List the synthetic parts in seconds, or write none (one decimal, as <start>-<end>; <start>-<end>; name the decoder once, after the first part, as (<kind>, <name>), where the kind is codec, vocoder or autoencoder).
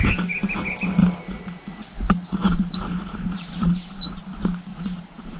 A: 1.0-4.2 (vocoder, Vocos); 4.7-5.4